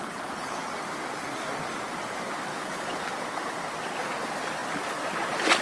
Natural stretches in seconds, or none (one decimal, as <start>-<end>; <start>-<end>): 0.6-2.5; 3.0-5.6